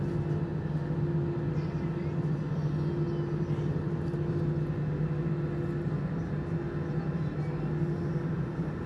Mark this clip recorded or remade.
recorded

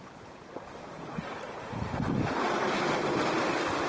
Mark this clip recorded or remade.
recorded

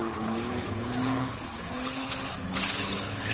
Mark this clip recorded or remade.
remade